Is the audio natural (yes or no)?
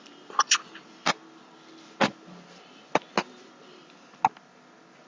yes